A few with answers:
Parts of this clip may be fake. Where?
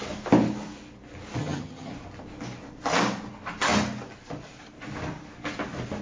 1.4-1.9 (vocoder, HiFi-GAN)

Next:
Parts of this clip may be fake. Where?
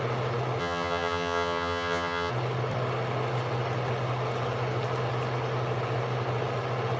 0.6-2.3 (vocoder, HiFi-GAN)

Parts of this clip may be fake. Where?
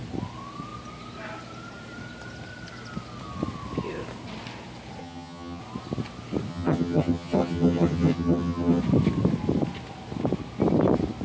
5.0-5.6 (vocoder, HiFi-GAN); 6.5-8.8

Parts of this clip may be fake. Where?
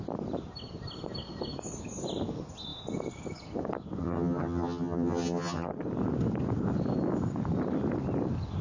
4.0-5.7 (vocoder, HiFi-GAN)